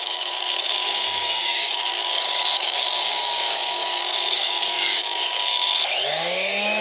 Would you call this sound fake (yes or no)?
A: yes